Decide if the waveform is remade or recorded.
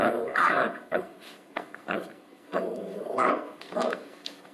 remade